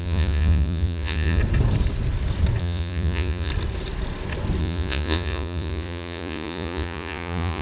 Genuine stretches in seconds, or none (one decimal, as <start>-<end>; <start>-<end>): 1.4-2.6; 3.5-4.6